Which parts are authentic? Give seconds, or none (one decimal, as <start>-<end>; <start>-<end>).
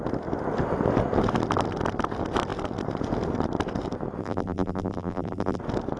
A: 0.0-4.2; 5.6-6.0